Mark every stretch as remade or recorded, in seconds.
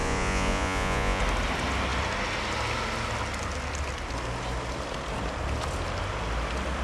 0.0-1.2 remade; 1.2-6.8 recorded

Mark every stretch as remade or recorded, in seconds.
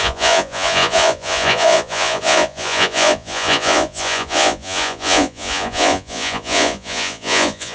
0.0-7.7 remade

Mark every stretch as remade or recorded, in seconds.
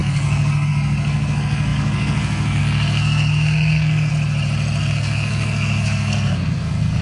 0.0-4.1 remade; 4.1-4.8 recorded; 4.8-7.0 remade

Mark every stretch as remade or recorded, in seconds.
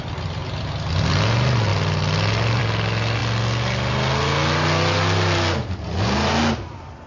0.0-7.1 recorded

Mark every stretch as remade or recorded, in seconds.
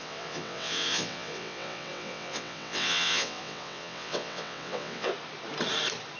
0.0-5.1 remade; 5.1-6.2 recorded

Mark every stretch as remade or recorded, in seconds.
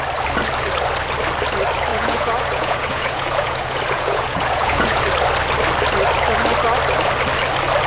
0.0-1.9 recorded; 1.9-5.0 remade; 5.0-7.9 recorded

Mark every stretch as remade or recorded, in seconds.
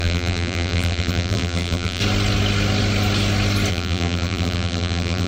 0.0-2.0 remade; 2.0-3.7 recorded; 3.7-5.3 remade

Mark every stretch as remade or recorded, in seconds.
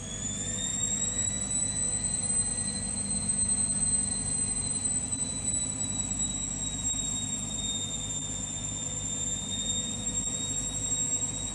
0.0-11.5 recorded